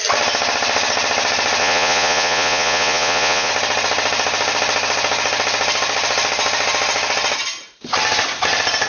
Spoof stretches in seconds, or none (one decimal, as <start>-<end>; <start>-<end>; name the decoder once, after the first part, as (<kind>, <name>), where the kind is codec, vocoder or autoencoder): 1.6-3.5 (vocoder, Vocos)